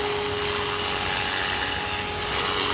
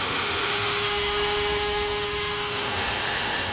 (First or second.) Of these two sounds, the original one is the first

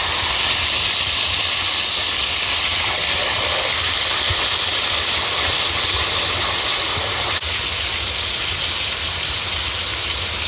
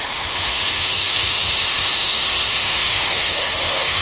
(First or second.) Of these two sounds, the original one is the first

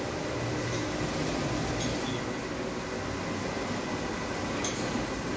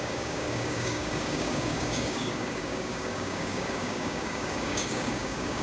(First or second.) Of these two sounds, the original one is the first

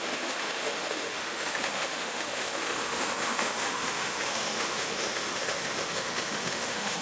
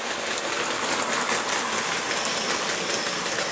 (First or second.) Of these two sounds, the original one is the second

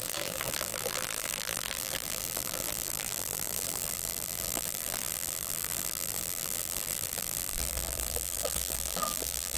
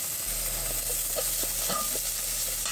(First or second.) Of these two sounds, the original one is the second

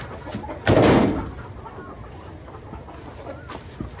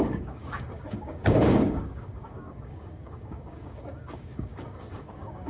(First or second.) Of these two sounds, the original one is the first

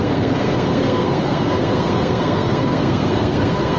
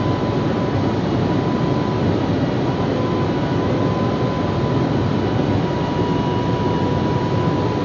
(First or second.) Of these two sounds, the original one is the second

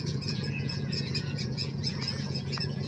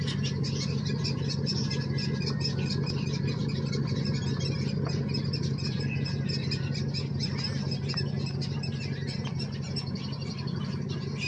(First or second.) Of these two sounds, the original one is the second